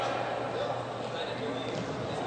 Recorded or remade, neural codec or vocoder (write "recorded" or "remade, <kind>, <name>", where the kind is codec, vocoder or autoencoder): recorded